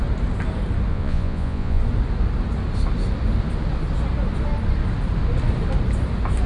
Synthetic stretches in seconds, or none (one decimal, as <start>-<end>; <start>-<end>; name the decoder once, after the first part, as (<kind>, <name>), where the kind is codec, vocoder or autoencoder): 0.9-1.8 (vocoder, Vocos)